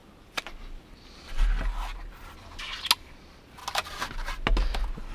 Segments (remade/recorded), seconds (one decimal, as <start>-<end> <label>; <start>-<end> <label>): 0.0-5.1 recorded

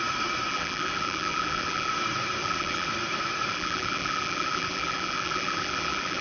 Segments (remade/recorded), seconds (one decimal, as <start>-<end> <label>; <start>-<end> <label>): 0.0-0.5 recorded; 0.5-1.9 remade; 1.9-2.4 recorded; 2.4-2.9 remade; 2.9-3.5 recorded; 3.5-6.2 remade

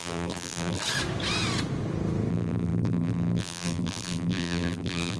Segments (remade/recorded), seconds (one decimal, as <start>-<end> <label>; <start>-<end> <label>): 0.0-0.8 remade; 0.8-2.3 recorded; 2.3-5.2 remade